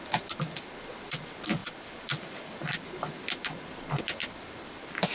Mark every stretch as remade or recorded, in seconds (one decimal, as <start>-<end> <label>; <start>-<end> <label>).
0.0-5.1 recorded